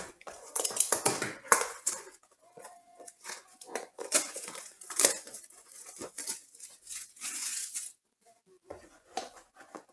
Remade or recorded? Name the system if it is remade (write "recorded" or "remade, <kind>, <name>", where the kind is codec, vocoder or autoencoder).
remade, vocoder, Vocos